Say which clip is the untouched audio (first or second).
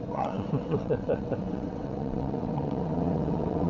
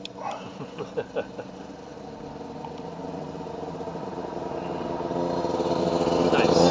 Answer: second